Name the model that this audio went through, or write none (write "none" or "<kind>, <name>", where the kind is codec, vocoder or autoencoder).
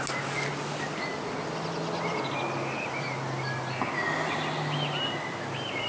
none